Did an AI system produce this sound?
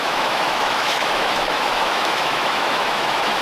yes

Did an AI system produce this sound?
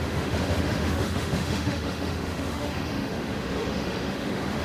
yes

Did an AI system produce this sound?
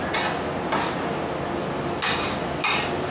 no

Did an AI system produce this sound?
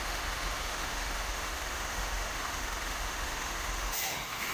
yes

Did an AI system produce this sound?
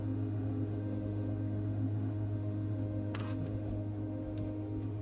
yes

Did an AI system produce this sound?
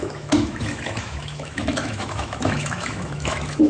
yes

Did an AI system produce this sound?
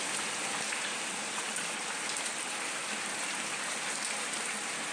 no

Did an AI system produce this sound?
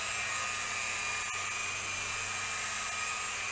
no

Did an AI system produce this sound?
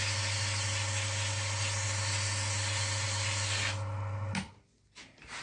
no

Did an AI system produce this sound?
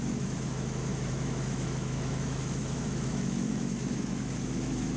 yes